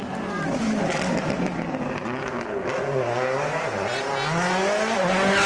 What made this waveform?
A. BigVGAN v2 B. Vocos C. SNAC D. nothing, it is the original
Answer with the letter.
D